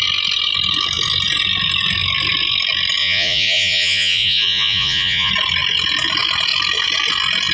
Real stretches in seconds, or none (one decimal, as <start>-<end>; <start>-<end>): 0.0-3.0; 5.3-7.5